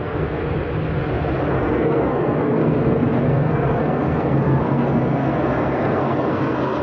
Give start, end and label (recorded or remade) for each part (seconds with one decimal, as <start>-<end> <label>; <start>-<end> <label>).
0.0-0.4 remade; 0.4-1.5 recorded; 1.5-6.8 remade